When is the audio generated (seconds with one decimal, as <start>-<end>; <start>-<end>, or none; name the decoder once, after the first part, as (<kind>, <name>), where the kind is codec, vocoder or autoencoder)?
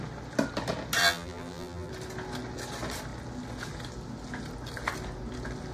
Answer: 1.0-1.9 (vocoder, BigVGAN v2)